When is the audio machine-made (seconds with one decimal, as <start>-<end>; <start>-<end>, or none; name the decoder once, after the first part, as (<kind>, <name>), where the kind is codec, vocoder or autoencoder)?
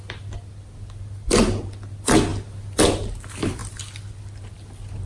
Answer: none